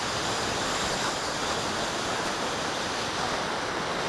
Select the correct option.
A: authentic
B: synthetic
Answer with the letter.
A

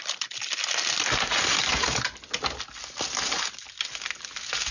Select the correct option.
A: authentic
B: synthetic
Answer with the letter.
A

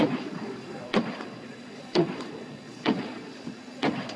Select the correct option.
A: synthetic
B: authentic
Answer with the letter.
A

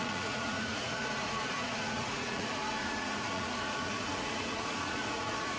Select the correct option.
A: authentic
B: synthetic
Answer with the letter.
B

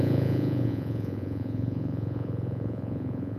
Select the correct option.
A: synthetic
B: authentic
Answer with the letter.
A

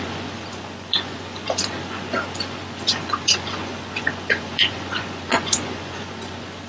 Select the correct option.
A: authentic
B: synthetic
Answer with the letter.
B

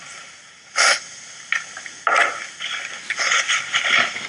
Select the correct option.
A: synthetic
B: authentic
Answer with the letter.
B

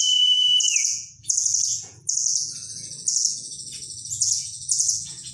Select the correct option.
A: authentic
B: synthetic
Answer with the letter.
B